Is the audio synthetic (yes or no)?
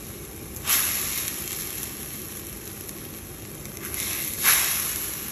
no